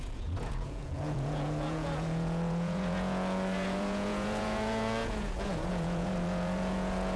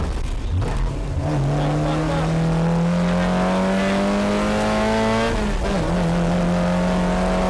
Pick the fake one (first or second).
first